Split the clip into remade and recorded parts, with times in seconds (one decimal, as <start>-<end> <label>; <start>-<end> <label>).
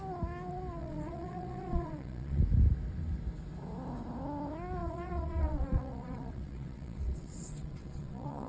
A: 0.0-0.8 recorded; 0.8-2.4 remade; 2.4-4.8 recorded; 4.8-8.5 remade